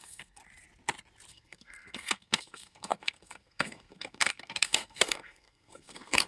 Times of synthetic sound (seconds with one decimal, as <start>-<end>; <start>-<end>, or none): 0.0-0.4; 1.3-6.3